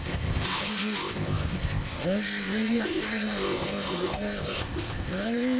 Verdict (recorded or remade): remade